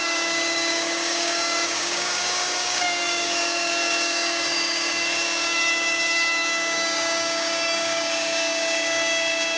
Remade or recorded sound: remade